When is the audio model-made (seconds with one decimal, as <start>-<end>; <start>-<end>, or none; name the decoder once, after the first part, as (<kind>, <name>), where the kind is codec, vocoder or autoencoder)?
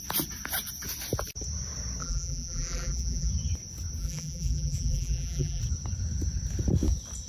2.0-3.3 (vocoder, BigVGAN v2); 4.0-5.6